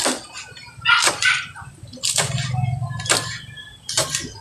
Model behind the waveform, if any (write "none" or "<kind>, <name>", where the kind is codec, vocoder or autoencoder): none